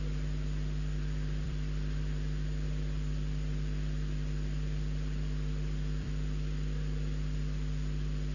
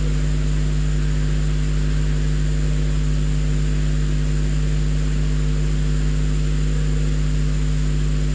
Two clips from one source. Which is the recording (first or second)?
second